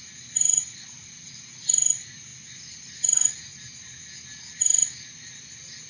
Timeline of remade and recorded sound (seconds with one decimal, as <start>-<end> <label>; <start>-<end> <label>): 0.0-5.9 recorded